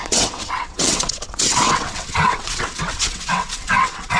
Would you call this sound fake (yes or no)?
yes